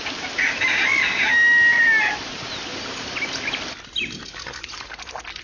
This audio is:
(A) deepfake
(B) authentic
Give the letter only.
B